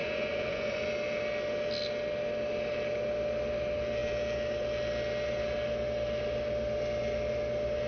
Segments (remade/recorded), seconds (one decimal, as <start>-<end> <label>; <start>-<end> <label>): 0.0-0.9 remade; 0.9-7.9 recorded